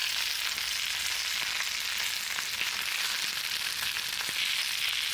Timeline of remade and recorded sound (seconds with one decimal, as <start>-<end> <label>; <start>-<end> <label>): 0.0-5.1 recorded

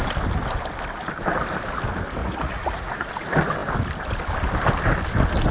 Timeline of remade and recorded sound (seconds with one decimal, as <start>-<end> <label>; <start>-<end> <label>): 0.0-2.2 recorded; 2.2-3.1 remade; 3.1-5.5 recorded

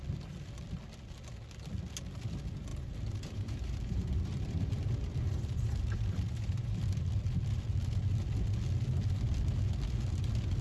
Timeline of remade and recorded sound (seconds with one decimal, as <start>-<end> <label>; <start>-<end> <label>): 0.0-2.7 recorded; 2.7-6.8 remade; 6.8-10.6 recorded

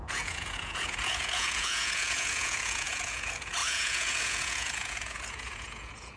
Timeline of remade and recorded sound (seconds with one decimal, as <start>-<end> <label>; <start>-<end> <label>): 0.0-6.2 remade

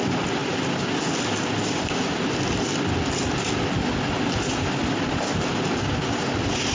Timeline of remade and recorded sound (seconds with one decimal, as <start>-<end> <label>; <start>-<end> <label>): 0.0-6.7 recorded

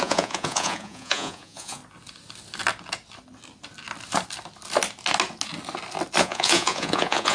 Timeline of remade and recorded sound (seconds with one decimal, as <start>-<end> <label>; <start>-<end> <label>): 0.0-1.8 remade; 1.8-6.2 recorded; 6.2-7.3 remade

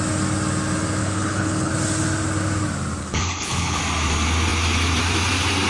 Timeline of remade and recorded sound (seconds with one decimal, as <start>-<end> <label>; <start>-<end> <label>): 0.0-1.0 recorded; 1.0-1.7 remade; 1.7-3.0 recorded; 3.0-3.8 remade; 3.8-5.7 recorded

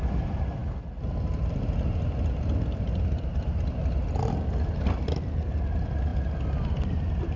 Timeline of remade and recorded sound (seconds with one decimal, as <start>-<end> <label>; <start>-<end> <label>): 0.0-7.4 recorded